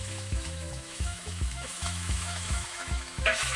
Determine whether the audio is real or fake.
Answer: fake